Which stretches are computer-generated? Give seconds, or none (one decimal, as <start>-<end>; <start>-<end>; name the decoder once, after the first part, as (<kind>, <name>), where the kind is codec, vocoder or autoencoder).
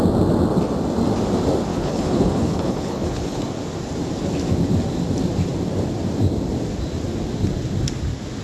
1.7-3.4 (codec, HILCodec)